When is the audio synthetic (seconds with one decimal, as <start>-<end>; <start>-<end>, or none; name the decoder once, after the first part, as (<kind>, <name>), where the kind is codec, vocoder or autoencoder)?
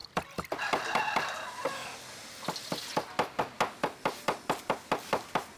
none